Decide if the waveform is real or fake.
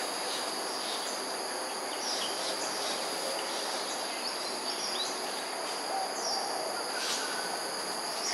real